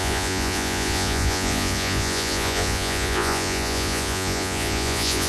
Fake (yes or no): yes